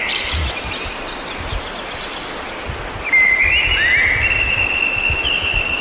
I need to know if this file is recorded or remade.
recorded